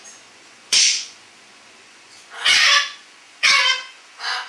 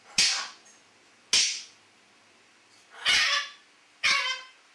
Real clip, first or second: second